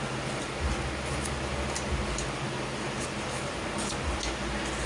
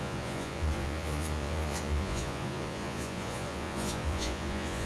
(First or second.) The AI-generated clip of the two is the second